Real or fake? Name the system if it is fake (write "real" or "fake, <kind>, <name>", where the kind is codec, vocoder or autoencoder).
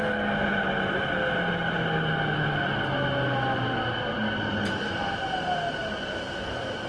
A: real